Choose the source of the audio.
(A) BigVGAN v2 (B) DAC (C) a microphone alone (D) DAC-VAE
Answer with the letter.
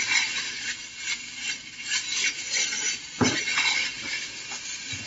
C